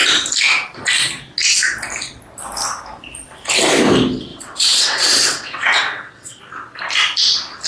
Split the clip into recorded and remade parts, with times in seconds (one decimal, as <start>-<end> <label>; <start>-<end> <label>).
0.0-4.3 recorded; 4.3-6.4 remade; 6.4-7.7 recorded